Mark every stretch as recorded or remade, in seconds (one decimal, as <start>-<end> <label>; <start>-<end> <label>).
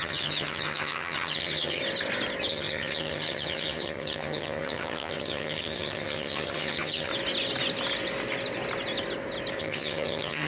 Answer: 0.0-1.8 remade; 1.8-2.5 recorded; 2.5-7.1 remade; 7.1-9.6 recorded; 9.6-10.5 remade